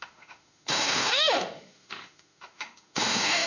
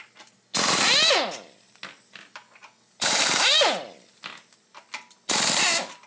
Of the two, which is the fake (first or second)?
first